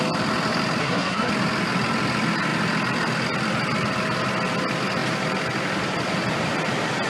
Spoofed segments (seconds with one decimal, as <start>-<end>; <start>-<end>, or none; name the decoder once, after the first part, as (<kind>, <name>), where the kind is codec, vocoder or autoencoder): 0.8-1.3 (codec, SNAC)

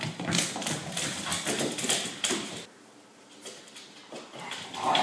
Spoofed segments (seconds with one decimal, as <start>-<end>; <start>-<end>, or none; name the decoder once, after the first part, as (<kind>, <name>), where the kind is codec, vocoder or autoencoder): none

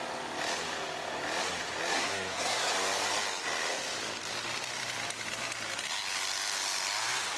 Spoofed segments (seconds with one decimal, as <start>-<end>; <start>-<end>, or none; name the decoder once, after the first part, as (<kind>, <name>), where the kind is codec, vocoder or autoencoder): 1.9-2.7 (codec, SNAC)

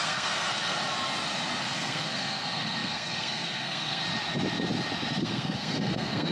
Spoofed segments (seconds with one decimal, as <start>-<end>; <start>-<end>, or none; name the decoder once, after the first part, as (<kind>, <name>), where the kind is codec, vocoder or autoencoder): 0.0-0.8 (codec, SNAC); 1.6-4.0; 5.2-6.3

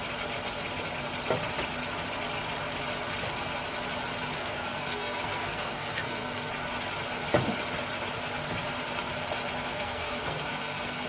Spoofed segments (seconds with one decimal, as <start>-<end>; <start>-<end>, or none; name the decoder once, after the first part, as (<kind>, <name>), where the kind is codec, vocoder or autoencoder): 4.4-6.5 (codec, SNAC); 9.7-11.1

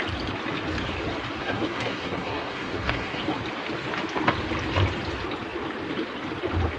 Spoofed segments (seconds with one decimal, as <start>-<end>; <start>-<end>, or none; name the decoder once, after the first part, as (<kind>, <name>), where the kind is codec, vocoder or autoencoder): 1.4-3.2 (codec, SNAC)

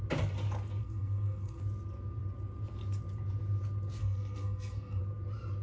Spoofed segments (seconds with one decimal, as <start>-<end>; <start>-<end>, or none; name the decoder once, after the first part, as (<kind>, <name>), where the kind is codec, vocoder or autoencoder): 0.8-1.6 (codec, SNAC); 4.0-5.0